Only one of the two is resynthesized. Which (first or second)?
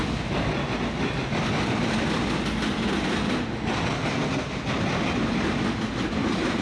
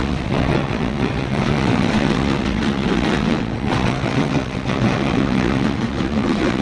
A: second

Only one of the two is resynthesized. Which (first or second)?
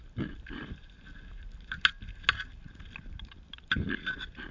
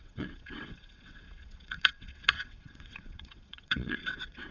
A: second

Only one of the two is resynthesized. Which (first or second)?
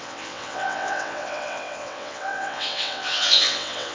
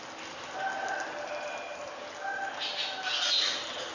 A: first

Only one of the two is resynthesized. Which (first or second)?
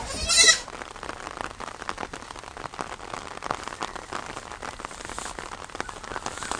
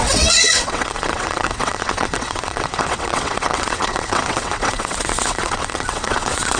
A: second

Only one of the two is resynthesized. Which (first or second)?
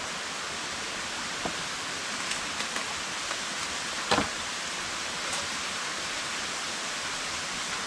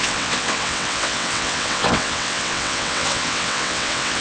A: second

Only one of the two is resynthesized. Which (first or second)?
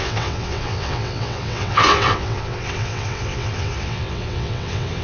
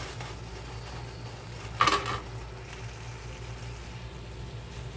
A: first